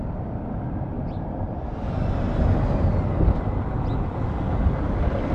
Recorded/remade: recorded